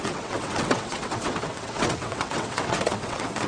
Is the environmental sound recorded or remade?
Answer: remade